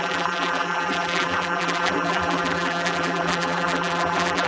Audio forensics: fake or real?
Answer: fake